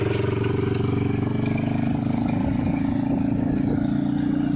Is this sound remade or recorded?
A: recorded